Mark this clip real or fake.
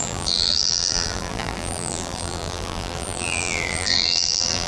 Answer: fake